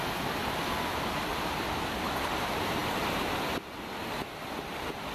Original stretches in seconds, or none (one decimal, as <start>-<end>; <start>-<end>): 0.0-5.1